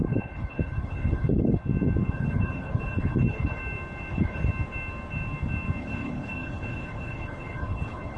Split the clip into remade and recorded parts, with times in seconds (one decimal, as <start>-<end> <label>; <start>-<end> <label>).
0.0-1.6 remade; 1.6-2.1 recorded; 2.1-3.6 remade; 3.6-4.1 recorded; 4.1-4.5 remade; 4.5-5.8 recorded; 5.8-8.2 remade